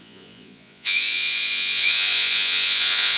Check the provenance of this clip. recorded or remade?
remade